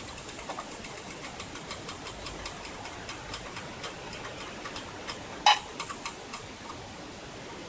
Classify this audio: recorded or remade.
recorded